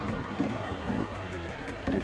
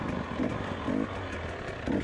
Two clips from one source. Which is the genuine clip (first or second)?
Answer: second